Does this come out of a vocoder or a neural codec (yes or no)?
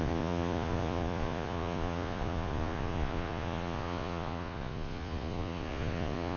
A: yes